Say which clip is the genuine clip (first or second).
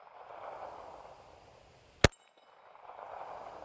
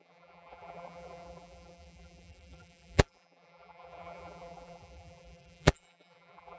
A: first